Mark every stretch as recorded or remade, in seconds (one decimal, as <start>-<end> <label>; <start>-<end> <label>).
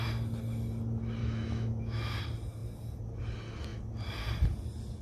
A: 0.0-1.2 recorded; 1.2-2.2 remade; 2.2-5.0 recorded